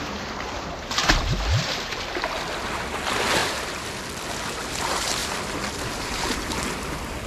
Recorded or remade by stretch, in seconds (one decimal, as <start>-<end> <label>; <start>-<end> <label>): 0.0-1.0 recorded; 1.0-2.2 remade; 2.2-7.3 recorded

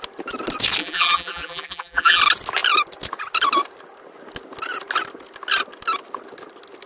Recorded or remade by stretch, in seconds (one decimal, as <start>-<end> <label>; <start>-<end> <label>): 0.0-0.8 recorded; 0.8-2.2 remade; 2.2-6.9 recorded

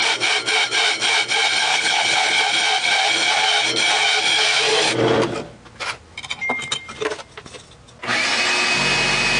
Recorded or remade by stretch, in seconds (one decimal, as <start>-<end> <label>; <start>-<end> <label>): 0.0-1.7 recorded; 1.7-2.4 remade; 2.4-9.4 recorded

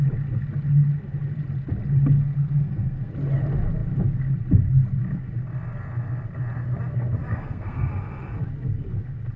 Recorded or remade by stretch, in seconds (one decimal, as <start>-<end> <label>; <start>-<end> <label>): 0.0-2.2 recorded; 2.2-3.1 remade; 3.1-7.3 recorded; 7.3-7.9 remade; 7.9-9.4 recorded

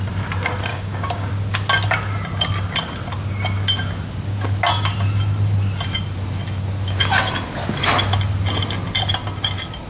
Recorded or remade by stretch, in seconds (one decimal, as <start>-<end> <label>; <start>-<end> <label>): 0.0-0.7 recorded; 0.7-1.3 remade; 1.3-9.9 recorded